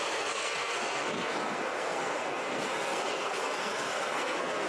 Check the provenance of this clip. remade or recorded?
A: remade